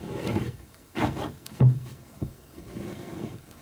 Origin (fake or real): fake